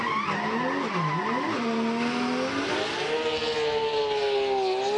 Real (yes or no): yes